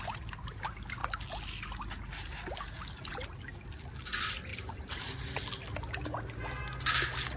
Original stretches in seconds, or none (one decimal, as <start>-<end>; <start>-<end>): 0.0-4.5; 5.0-7.4